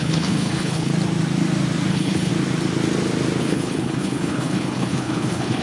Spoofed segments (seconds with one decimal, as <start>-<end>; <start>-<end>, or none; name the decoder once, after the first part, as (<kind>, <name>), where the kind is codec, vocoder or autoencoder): 0.0-0.9 (codec, HILCodec); 1.9-2.3; 3.4-5.6